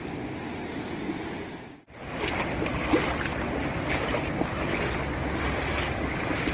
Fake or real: real